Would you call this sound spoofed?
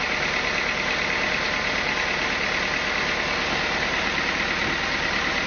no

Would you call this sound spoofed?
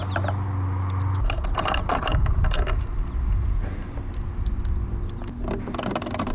no